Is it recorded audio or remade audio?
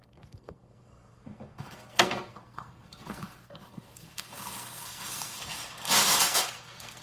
remade